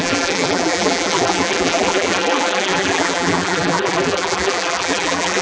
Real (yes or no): no